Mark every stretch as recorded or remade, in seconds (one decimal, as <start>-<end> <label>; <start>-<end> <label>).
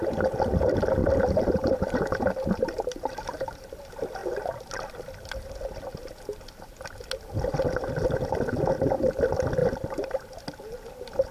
0.0-1.0 recorded; 1.0-3.8 remade; 3.8-9.6 recorded; 9.6-10.2 remade; 10.2-11.3 recorded